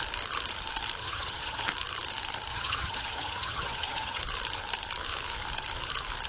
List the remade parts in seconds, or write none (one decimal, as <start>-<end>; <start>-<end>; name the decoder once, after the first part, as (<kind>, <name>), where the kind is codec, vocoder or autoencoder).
1.0-1.6 (vocoder, HiFi-GAN); 2.5-4.2